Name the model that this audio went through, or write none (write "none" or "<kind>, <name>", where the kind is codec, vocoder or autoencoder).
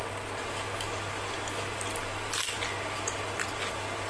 none